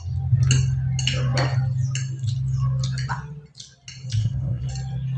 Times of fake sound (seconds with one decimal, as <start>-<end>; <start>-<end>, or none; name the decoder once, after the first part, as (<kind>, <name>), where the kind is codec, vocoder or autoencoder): 4.2-4.7 (codec, SNAC)